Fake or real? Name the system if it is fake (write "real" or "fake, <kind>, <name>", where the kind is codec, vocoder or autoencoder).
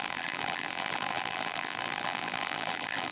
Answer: fake, vocoder, BigVGAN v2